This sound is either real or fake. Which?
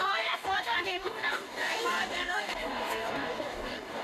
fake